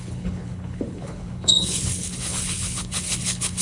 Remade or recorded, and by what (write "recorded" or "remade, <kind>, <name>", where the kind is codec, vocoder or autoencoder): remade, codec, HILCodec